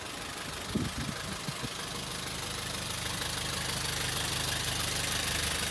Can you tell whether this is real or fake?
real